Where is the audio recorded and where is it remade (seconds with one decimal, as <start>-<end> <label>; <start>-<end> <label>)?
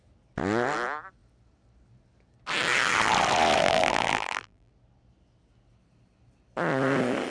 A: 0.0-3.6 recorded; 3.6-4.7 remade; 4.7-7.3 recorded